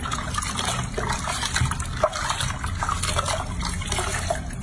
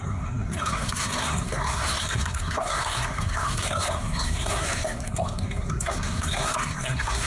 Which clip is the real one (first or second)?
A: first